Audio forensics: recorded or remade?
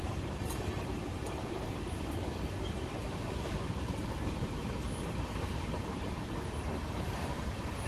remade